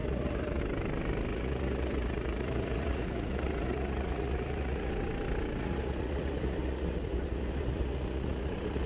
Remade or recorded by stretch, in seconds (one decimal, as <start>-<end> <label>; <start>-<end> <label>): 0.0-0.6 remade; 0.6-1.3 recorded; 1.3-4.9 remade; 4.9-5.6 recorded; 5.6-8.9 remade